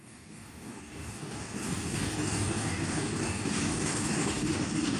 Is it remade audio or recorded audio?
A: remade